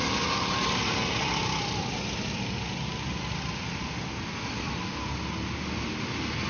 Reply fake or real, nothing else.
real